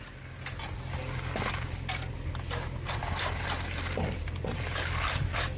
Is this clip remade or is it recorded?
recorded